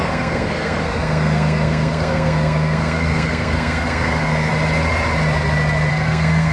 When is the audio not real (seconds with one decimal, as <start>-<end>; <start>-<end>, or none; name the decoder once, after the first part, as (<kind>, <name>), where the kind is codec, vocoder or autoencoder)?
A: 0.0-4.5 (codec, SNAC); 5.9-6.5